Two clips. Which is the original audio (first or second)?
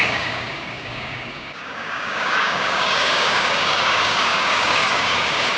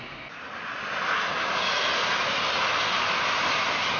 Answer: second